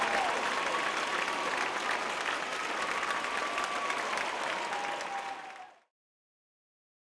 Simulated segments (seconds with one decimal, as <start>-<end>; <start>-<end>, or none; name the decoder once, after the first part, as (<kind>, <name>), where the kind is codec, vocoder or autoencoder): none